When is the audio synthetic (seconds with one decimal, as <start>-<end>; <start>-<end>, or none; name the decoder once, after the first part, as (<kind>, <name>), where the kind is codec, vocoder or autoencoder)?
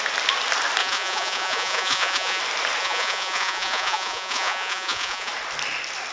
0.8-2.4 (vocoder, Vocos); 2.8-5.3